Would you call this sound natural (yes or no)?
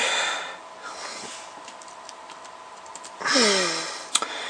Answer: yes